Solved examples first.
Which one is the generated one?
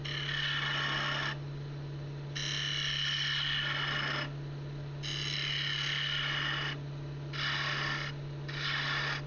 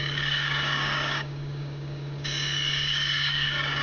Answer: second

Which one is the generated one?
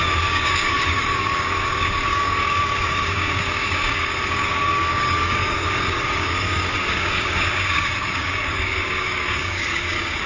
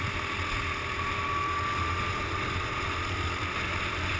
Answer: first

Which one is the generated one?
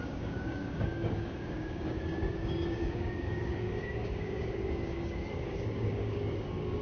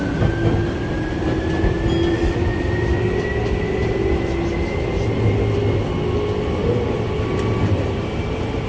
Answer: first